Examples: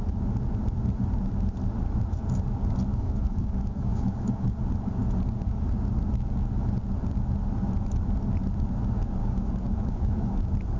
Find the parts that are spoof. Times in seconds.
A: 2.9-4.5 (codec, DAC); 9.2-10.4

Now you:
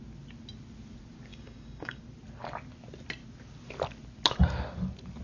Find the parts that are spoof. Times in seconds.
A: 1.3-2.0 (codec, DAC)

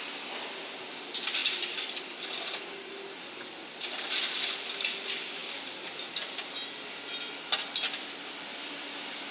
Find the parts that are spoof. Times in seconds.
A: none

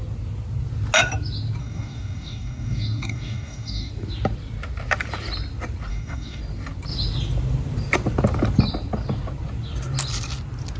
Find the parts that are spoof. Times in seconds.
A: 1.6-3.9 (codec, DAC); 5.9-6.4

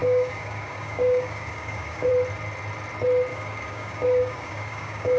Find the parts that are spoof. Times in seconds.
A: 0.0-2.1 (codec, DAC); 3.3-5.2